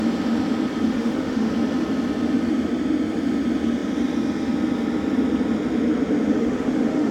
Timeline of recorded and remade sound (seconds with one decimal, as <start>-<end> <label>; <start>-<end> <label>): 0.0-0.9 recorded; 0.9-1.5 remade; 1.5-6.3 recorded; 6.3-7.1 remade